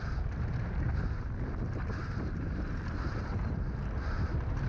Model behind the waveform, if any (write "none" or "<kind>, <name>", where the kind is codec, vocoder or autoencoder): none